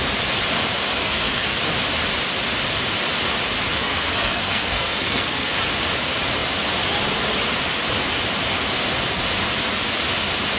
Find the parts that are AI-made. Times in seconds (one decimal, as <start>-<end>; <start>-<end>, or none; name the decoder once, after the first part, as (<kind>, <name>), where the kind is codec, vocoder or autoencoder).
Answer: 1.0-1.6 (codec, SNAC); 3.7-5.5